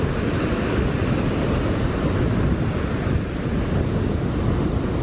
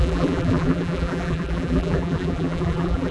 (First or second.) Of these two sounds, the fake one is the second